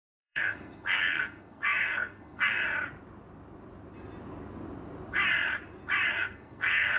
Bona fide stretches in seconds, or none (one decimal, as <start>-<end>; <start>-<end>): 2.6-6.1